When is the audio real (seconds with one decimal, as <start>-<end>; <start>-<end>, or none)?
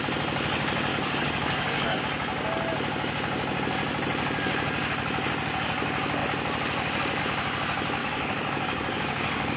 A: 0.0-0.9; 2.0-8.0